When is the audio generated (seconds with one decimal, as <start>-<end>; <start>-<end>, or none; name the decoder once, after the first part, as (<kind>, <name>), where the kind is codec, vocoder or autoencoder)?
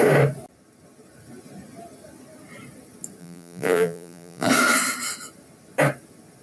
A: 3.2-4.5 (vocoder, BigVGAN v2)